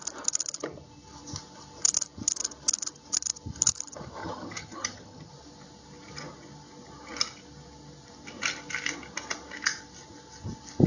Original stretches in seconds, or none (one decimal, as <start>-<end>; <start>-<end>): 0.0-4.2; 5.3-10.9